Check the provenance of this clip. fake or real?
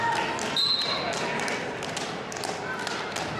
real